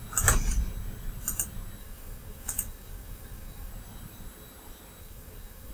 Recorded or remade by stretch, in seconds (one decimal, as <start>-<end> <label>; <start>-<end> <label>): 0.0-1.8 recorded; 1.8-3.7 remade; 3.7-5.0 recorded; 5.0-5.7 remade